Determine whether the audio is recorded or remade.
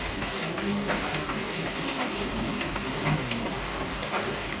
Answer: remade